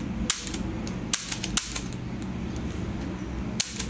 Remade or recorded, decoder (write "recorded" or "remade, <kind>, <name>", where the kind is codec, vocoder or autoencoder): recorded